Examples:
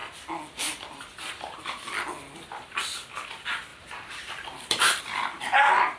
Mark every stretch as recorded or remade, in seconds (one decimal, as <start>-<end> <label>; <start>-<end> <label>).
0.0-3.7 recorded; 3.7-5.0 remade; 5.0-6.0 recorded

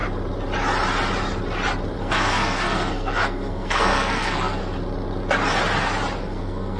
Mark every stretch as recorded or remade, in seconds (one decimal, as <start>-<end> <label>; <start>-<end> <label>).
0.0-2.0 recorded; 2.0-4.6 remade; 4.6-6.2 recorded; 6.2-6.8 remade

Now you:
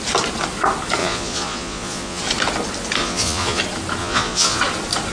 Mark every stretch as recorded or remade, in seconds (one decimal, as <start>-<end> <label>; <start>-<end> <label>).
0.0-1.0 recorded; 1.0-2.2 remade; 2.2-3.0 recorded; 3.0-3.6 remade; 3.6-4.0 recorded; 4.0-4.6 remade; 4.6-5.1 recorded

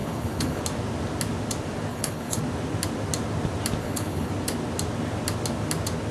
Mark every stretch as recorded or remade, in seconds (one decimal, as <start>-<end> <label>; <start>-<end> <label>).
0.0-0.6 remade; 0.6-1.9 recorded; 1.9-2.4 remade; 2.4-3.8 recorded; 3.8-4.3 remade; 4.3-6.1 recorded

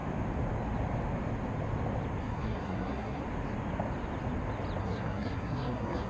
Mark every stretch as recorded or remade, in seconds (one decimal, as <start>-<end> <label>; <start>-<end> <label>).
0.0-2.2 recorded; 2.2-3.2 remade; 3.2-4.8 recorded; 4.8-6.1 remade